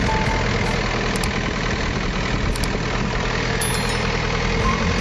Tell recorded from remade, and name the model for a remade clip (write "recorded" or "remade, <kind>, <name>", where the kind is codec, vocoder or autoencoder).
recorded